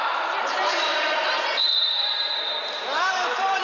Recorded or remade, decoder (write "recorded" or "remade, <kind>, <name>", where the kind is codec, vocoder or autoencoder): remade, vocoder, BigVGAN v2